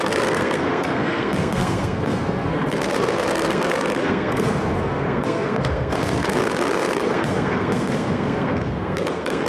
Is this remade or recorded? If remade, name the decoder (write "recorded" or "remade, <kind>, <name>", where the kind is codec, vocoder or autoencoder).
remade, codec, SNAC